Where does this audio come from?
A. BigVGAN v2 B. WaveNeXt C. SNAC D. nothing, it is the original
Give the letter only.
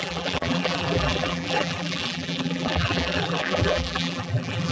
A